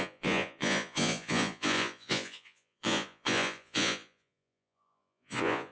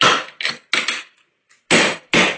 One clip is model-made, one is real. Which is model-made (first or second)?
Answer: first